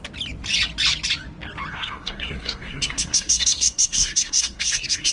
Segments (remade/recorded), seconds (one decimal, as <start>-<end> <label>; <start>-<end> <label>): 0.0-1.7 recorded; 1.7-5.1 remade